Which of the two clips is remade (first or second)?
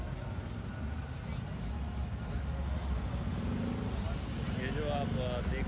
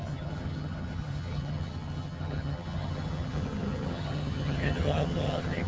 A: second